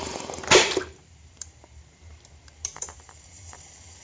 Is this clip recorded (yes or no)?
no